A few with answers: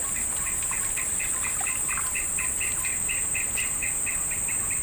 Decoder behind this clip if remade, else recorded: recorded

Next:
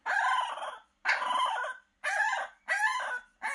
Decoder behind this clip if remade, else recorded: recorded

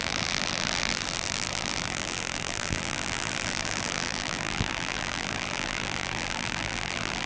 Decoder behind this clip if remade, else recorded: remade, vocoder, BigVGAN v2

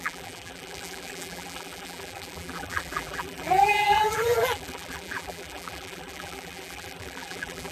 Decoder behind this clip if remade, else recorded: remade, vocoder, BigVGAN v2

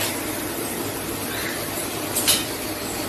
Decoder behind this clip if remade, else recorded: remade, vocoder, BigVGAN v2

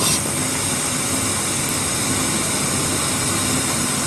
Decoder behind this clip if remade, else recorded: recorded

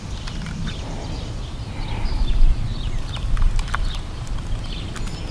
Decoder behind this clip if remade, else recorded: remade, vocoder, BigVGAN v2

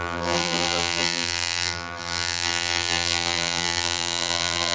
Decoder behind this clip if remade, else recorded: remade, vocoder, BigVGAN v2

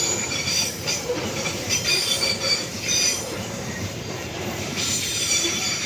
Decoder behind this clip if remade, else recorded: remade, vocoder, BigVGAN v2